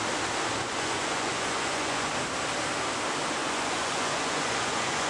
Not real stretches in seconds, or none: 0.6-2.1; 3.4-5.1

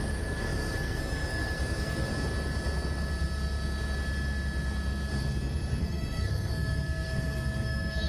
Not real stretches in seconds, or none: 0.0-2.1; 5.8-8.1